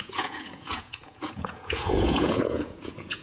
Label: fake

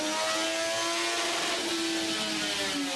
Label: real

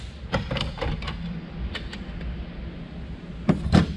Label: real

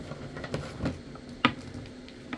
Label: real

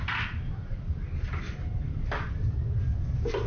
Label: real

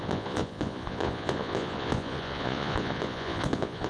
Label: fake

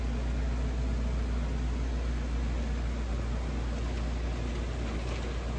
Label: real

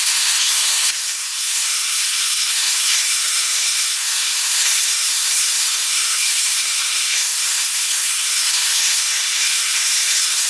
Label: fake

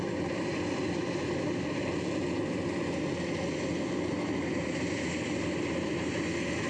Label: real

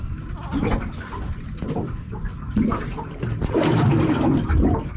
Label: real